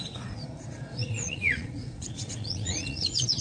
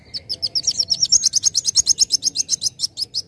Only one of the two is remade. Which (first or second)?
first